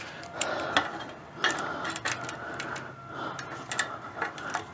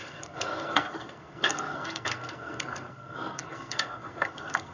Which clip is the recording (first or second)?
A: first